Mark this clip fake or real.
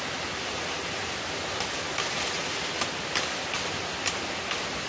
real